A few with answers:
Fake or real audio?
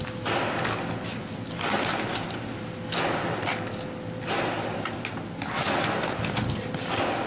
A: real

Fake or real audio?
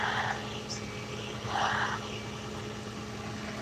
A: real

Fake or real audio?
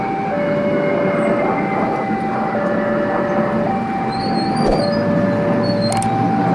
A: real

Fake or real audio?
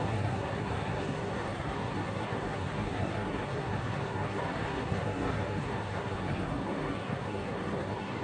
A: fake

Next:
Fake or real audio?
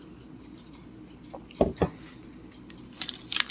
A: real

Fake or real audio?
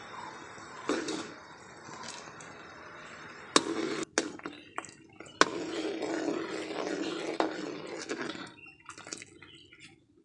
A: real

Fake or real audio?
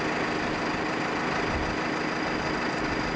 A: real